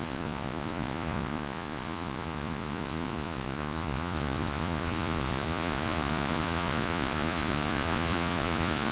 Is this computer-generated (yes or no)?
yes